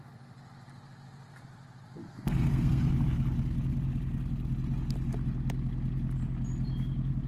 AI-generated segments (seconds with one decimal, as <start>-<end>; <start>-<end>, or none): 2.0-2.9